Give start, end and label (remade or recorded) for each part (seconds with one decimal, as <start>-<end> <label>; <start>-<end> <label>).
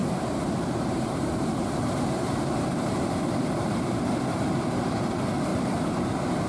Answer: 0.0-3.9 remade; 3.9-5.5 recorded; 5.5-6.5 remade